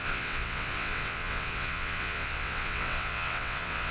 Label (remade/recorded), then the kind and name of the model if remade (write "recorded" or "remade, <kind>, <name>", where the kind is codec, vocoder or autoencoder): remade, vocoder, WaveNeXt